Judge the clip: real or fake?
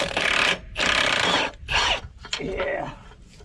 real